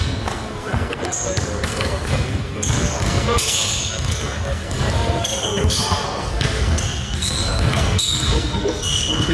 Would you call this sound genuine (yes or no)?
no